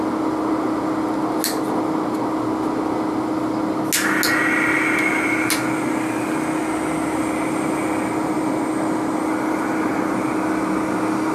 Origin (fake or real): real